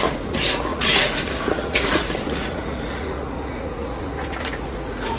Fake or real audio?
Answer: fake